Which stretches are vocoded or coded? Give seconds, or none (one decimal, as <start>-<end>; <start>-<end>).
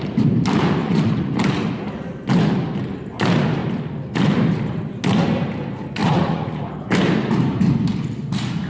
0.8-1.3; 6.0-6.7